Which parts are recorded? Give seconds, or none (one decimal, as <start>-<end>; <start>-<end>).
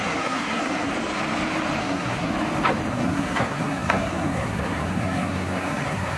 0.9-1.8; 2.3-2.9